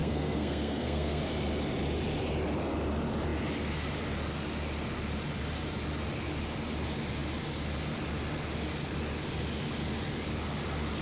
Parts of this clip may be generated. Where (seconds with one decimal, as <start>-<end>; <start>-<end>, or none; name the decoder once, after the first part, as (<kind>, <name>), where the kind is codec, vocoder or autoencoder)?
0.0-1.2 (codec, SNAC)